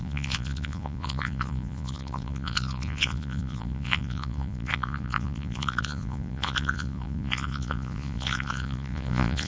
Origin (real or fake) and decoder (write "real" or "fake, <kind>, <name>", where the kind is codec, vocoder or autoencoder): fake, vocoder, Vocos